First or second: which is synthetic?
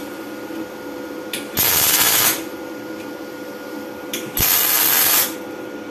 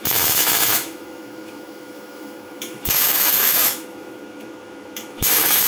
second